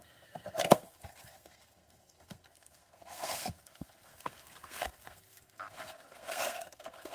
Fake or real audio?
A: fake